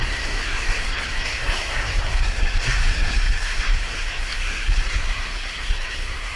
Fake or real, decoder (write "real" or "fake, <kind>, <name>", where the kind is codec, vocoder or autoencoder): fake, codec, SNAC